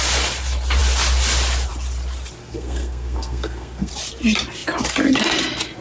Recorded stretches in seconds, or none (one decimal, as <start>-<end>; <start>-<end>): 0.0-2.4; 3.9-5.8